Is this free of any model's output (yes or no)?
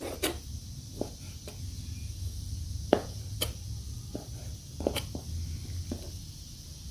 no